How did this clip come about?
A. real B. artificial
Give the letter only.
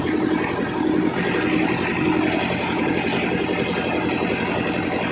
A